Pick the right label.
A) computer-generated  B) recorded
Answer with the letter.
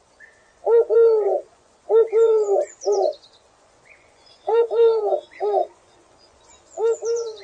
A